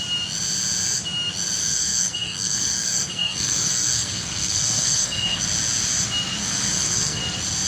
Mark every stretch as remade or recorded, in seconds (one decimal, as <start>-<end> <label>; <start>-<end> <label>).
0.0-1.6 recorded; 1.6-5.4 remade; 5.4-6.4 recorded; 6.4-7.2 remade; 7.2-7.7 recorded